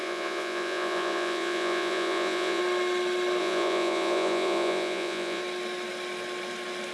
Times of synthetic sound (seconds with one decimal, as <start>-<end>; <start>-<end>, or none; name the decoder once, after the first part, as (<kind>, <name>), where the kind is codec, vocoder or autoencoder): 0.0-2.6 (vocoder, Vocos); 3.4-5.4